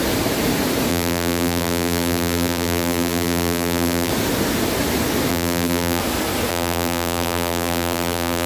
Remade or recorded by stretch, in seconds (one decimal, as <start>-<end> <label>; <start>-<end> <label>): 0.0-0.9 recorded; 0.9-4.1 remade; 4.1-5.3 recorded; 5.3-6.0 remade; 6.0-6.5 recorded; 6.5-8.5 remade